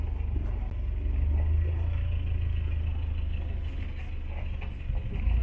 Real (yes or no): yes